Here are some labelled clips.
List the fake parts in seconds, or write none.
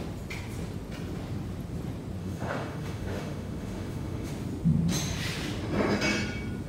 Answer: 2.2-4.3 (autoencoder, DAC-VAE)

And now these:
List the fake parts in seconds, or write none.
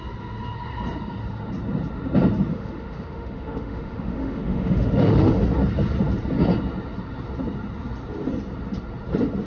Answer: 2.5-5.4 (autoencoder, DAC-VAE)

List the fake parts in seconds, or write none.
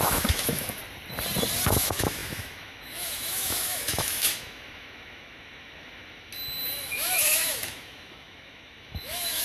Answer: 0.0-0.8 (autoencoder, DAC-VAE); 1.7-6.3; 6.8-9.4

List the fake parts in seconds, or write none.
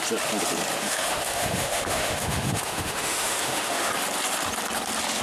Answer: 0.8-3.9 (autoencoder, DAC-VAE)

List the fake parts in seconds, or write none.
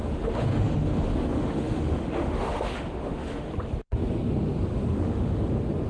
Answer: 0.0-3.5 (autoencoder, DAC-VAE); 4.7-5.5